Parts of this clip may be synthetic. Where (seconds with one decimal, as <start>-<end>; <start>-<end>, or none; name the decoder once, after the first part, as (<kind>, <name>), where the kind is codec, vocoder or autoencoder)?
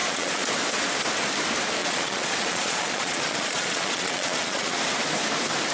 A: 0.0-0.5 (vocoder, Vocos); 1.8-4.8